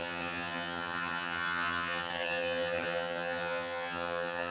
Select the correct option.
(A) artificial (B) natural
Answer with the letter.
A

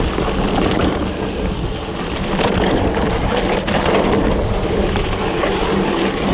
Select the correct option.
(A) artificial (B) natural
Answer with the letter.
B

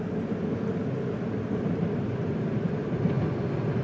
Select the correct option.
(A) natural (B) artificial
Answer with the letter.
A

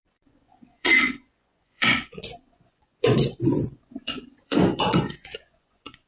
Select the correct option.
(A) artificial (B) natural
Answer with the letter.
A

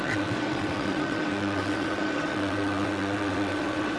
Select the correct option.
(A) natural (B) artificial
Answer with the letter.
B